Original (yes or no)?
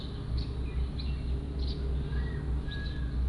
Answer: yes